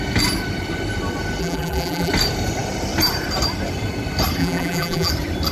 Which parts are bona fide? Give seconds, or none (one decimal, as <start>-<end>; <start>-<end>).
0.0-1.4; 2.1-4.4; 5.1-5.5

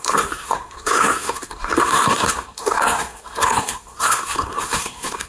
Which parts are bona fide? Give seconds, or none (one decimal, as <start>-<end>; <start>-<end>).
none

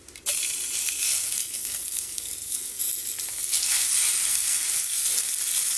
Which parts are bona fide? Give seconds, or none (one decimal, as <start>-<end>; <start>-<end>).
0.0-0.8; 2.8-3.3; 3.9-4.3; 5.3-5.8